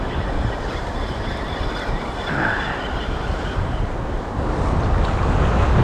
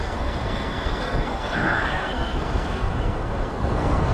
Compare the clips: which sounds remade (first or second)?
second